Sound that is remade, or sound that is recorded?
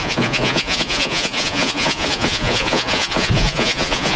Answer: remade